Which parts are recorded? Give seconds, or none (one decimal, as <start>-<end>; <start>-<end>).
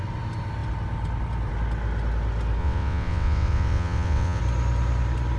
0.0-2.6; 4.4-5.4